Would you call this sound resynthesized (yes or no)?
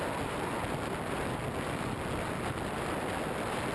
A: no